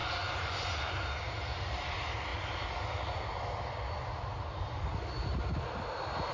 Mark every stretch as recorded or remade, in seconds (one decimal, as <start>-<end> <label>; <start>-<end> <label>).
0.0-0.8 remade; 0.8-6.3 recorded